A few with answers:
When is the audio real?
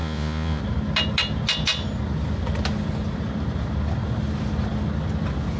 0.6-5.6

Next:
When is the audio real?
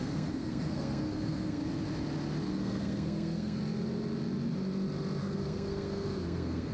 1.6-2.5; 3.6-5.2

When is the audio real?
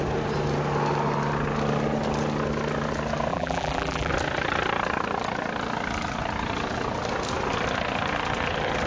0.0-3.3; 4.1-8.9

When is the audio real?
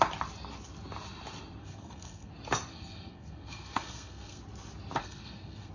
0.0-1.6; 2.3-2.7; 4.4-5.0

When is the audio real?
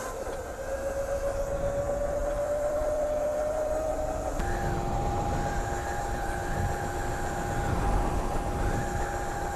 0.0-2.2; 4.4-9.6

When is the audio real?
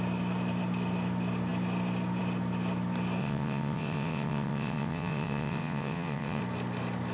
0.0-3.2; 6.4-7.1